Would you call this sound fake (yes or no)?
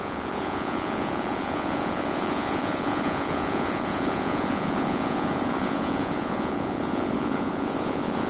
yes